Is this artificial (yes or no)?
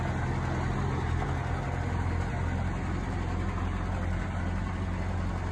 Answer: no